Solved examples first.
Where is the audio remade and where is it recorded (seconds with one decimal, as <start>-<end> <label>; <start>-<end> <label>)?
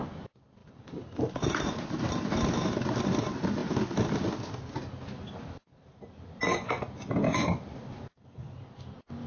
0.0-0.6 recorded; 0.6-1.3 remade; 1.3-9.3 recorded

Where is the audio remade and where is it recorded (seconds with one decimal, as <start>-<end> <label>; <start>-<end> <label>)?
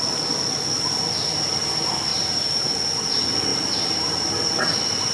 0.0-2.1 recorded; 2.1-2.7 remade; 2.7-3.5 recorded; 3.5-4.3 remade; 4.3-5.1 recorded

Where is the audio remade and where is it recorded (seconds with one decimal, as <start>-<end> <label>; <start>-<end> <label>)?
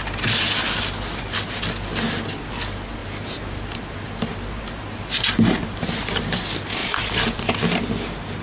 0.0-3.0 recorded; 3.0-6.2 remade; 6.2-6.8 recorded; 6.8-7.6 remade; 7.6-8.4 recorded